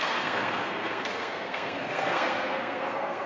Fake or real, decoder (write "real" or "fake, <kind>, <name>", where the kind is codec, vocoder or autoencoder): fake, codec, SNAC